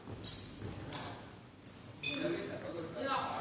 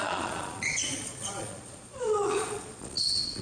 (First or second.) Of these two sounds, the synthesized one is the second